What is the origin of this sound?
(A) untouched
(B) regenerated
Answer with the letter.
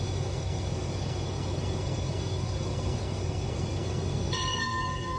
B